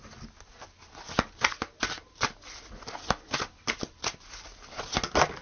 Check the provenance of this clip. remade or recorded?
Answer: recorded